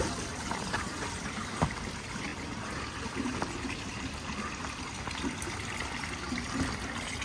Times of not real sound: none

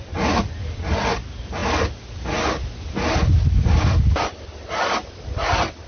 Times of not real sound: none

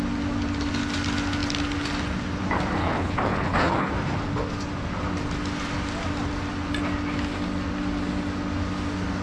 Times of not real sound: 2.8-3.9

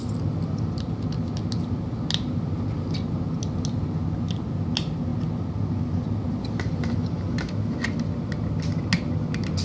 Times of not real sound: none

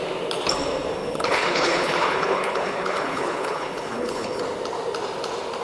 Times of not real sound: 1.0-4.4

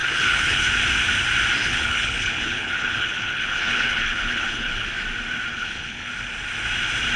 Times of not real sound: 0.0-0.7; 1.6-4.9; 5.5-6.1